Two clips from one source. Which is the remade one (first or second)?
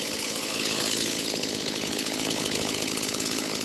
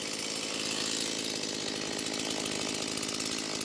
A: first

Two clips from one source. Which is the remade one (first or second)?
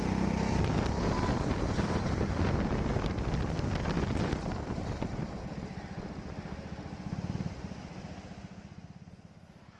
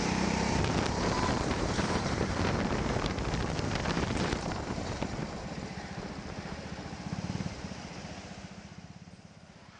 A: second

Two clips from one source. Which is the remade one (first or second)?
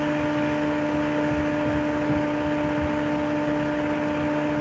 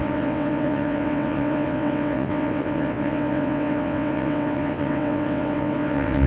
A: second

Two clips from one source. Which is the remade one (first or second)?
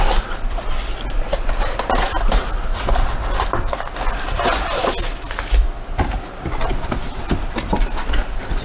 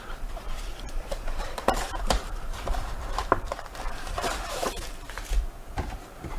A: second